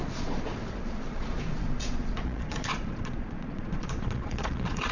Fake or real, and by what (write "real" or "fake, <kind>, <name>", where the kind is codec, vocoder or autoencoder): fake, vocoder, Vocos